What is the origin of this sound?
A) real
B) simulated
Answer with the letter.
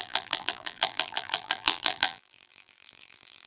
B